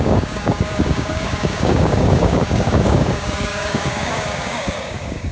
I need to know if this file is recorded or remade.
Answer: remade